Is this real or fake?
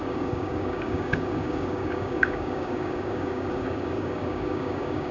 fake